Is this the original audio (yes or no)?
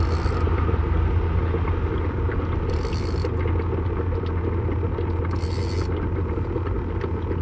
yes